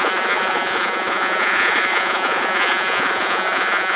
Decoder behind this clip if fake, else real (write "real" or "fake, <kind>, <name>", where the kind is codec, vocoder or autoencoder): fake, vocoder, Vocos